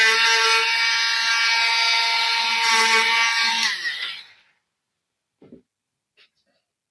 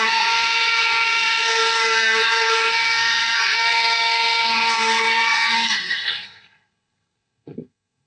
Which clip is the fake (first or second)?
second